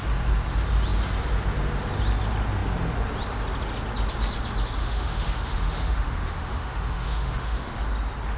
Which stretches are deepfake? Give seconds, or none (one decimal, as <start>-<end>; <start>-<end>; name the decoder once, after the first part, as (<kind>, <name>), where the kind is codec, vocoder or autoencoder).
4.8-7.8 (autoencoder, DAC-VAE)